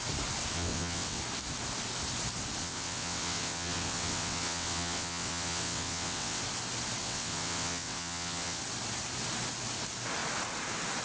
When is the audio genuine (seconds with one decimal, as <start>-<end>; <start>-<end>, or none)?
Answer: 0.0-0.5; 1.2-2.6; 6.4-7.0; 8.6-11.0